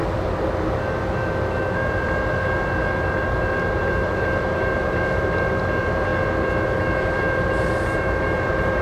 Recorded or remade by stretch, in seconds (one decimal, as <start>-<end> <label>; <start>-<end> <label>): 0.0-3.7 recorded; 3.7-6.1 remade; 6.1-7.0 recorded; 7.0-8.8 remade